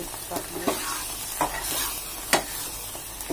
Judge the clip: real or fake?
real